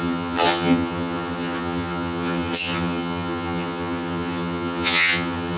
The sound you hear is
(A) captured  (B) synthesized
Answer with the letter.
B